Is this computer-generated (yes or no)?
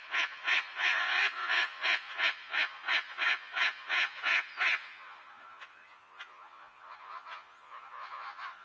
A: yes